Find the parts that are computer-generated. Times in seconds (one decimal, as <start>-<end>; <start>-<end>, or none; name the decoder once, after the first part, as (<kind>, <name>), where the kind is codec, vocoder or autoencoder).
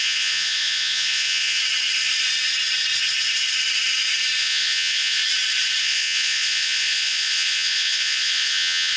0.0-1.6 (vocoder, Vocos); 4.4-5.2; 5.8-9.0